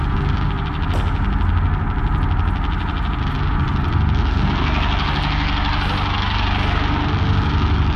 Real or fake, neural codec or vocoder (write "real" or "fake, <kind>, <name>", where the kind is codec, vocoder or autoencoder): real